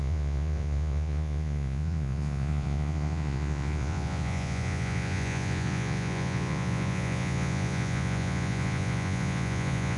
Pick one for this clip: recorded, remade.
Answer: remade